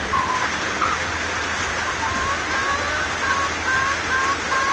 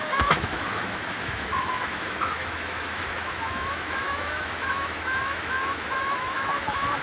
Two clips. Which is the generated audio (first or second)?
second